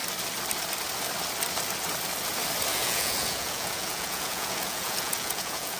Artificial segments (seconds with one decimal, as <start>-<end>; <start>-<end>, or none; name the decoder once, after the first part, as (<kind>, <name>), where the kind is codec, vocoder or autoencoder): 2.7-5.8 (vocoder, Vocos)